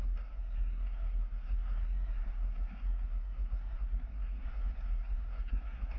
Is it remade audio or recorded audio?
remade